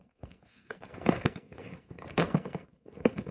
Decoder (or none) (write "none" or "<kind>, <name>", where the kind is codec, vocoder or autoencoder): codec, SNAC